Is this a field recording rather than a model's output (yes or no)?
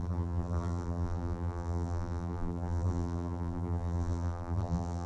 no